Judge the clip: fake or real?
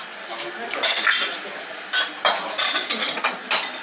real